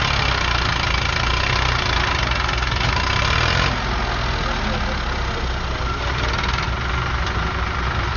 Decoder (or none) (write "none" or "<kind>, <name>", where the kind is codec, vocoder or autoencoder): none